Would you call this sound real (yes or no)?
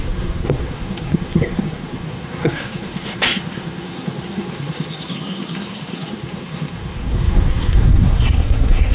no